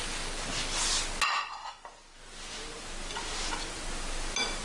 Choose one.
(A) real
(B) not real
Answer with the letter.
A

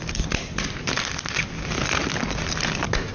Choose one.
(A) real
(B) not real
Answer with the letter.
A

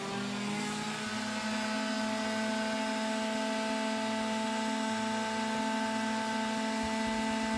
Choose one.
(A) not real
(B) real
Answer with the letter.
B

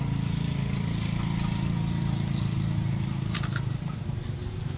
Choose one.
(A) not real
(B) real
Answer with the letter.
B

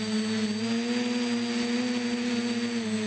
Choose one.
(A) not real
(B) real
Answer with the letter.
B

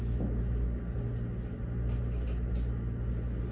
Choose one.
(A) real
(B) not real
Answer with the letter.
A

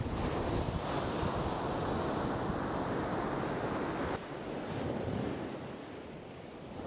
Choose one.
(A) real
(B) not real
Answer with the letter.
A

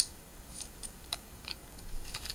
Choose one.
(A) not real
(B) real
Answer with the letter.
A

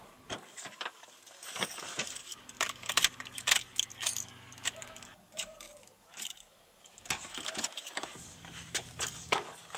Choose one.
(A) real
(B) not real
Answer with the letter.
B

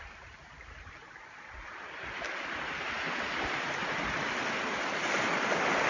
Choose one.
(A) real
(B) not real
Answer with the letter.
A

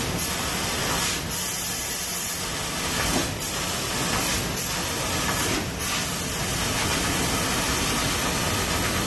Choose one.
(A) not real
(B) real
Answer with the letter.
B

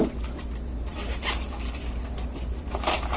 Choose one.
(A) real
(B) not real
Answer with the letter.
A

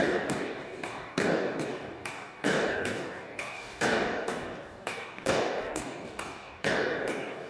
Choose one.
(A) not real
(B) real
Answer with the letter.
A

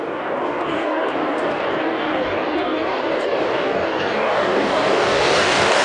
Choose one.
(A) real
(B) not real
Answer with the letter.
B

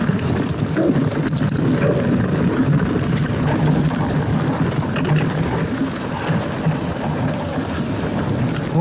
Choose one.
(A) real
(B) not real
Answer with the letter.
A